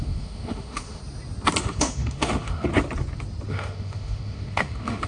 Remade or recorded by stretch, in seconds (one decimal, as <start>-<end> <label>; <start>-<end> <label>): 0.0-1.0 remade; 1.0-1.6 recorded; 1.6-2.7 remade; 2.7-3.5 recorded; 3.5-5.1 remade